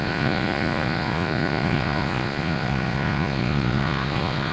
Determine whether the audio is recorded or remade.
remade